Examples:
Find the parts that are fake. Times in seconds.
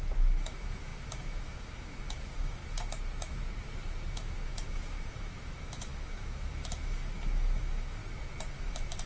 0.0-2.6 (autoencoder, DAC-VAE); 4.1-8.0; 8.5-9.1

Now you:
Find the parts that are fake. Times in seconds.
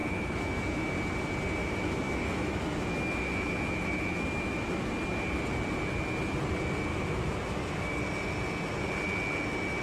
0.0-0.9 (autoencoder, DAC-VAE); 1.6-4.9; 6.9-7.9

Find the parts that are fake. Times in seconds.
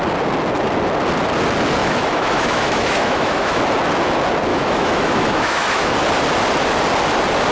1.8-3.6 (autoencoder, DAC-VAE); 4.5-5.9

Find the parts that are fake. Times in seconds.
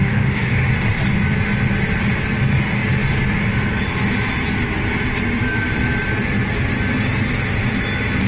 0.0-0.7 (autoencoder, DAC-VAE)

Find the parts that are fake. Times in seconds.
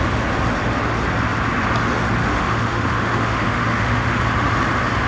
2.2-4.2 (autoencoder, DAC-VAE)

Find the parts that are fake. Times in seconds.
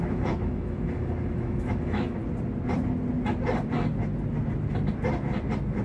0.0-2.2 (autoencoder, DAC-VAE)